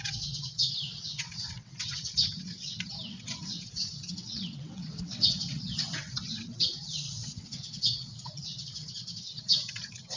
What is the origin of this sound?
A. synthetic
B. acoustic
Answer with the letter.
A